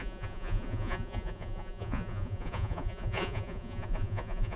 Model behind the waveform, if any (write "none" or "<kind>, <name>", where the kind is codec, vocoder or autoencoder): vocoder, Vocos